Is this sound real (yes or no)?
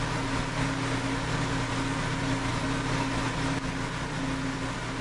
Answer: yes